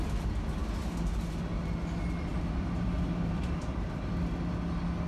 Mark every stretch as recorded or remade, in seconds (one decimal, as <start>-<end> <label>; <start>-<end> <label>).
0.0-2.3 recorded; 2.3-4.1 remade; 4.1-5.1 recorded